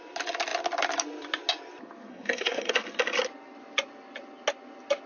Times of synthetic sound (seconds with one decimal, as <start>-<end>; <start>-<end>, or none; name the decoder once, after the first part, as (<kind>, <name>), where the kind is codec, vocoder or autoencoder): 2.1-2.7 (codec, SNAC)